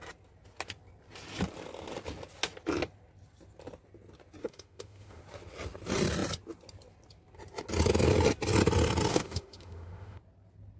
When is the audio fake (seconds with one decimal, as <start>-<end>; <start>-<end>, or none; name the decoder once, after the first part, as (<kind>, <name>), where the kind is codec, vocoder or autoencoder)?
4.4-5.2 (autoencoder, DAC-VAE); 9.1-10.2